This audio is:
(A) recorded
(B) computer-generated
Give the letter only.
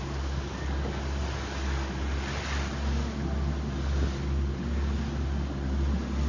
A